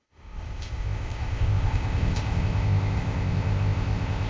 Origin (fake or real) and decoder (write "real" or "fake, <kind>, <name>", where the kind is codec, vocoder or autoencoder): fake, codec, ZipCodec